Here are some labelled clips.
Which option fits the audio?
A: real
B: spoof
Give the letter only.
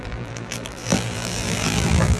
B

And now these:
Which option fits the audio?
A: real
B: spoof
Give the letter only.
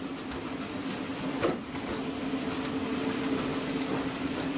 A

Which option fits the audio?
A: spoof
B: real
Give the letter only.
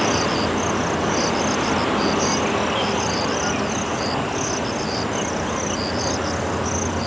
B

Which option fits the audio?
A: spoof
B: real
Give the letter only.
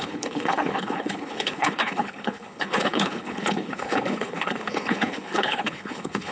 A